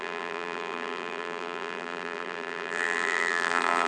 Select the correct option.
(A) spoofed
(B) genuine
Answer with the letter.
A